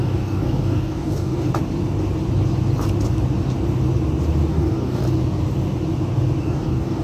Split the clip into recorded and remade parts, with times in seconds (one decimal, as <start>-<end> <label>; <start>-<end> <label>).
0.0-1.5 remade; 1.5-4.5 recorded; 4.5-5.0 remade; 5.0-6.4 recorded; 6.4-7.0 remade